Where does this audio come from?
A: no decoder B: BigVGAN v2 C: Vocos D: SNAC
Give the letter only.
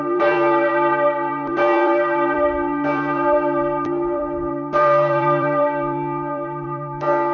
B